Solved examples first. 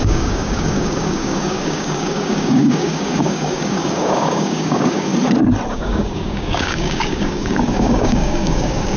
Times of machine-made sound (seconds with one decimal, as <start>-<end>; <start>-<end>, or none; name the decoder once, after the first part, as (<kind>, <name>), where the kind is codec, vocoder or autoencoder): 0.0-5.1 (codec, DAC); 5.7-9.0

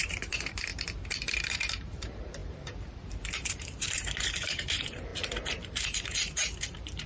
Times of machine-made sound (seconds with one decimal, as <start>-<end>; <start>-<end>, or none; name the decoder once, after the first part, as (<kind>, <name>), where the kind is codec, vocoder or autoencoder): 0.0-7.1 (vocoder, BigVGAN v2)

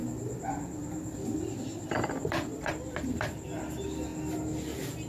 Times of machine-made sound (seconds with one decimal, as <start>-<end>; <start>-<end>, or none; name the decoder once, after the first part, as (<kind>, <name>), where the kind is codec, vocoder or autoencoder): 0.0-4.1 (vocoder, BigVGAN v2)